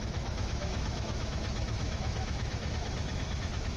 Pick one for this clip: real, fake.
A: fake